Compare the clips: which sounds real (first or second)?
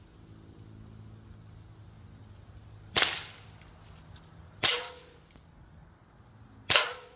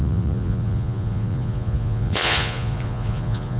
first